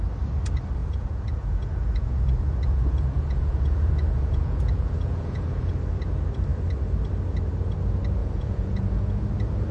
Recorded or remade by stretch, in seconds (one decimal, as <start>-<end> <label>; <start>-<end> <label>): 0.0-0.8 recorded; 0.8-5.7 remade; 5.7-8.2 recorded; 8.2-9.1 remade; 9.1-9.7 recorded